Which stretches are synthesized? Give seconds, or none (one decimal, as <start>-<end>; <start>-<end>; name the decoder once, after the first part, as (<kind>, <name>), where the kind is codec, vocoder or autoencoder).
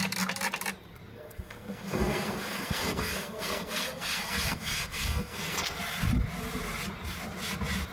1.1-5.8 (codec, SNAC)